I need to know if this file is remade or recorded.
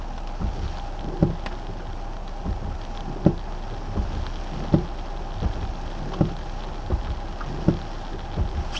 recorded